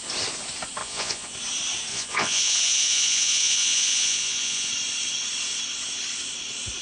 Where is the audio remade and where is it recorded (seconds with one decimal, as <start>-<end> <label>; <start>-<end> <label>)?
0.0-0.8 recorded; 0.8-1.3 remade; 1.3-1.9 recorded; 1.9-4.7 remade; 4.7-6.8 recorded